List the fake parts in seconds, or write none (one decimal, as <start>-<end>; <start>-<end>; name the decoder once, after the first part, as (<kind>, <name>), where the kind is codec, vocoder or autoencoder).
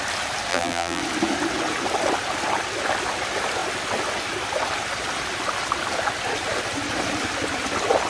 0.5-1.0 (vocoder, BigVGAN v2)